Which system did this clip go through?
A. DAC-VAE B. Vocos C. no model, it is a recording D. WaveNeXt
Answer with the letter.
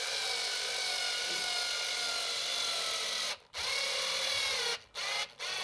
C